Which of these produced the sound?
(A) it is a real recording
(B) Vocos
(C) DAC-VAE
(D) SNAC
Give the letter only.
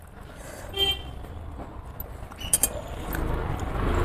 A